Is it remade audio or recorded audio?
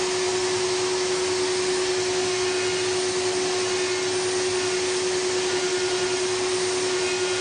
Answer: recorded